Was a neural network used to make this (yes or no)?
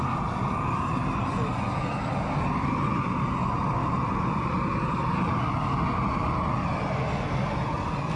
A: no